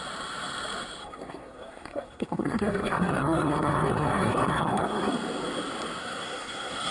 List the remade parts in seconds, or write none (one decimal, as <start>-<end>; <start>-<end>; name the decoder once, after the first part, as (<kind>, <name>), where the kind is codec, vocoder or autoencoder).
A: 1.0-5.1 (codec, SNAC); 6.0-6.9